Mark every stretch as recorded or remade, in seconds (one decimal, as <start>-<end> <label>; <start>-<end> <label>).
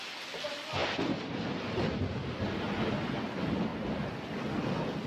0.0-5.1 recorded